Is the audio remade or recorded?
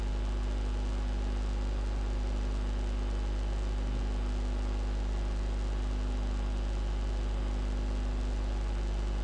recorded